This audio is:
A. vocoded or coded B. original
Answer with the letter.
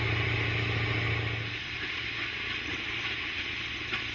B